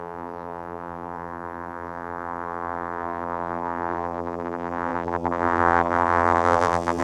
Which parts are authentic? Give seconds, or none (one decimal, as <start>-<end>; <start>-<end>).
none